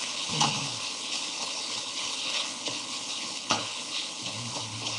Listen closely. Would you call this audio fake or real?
fake